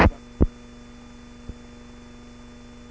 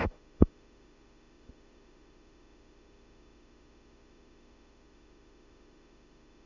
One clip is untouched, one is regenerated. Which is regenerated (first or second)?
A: second